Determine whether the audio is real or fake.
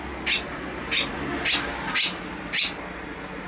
real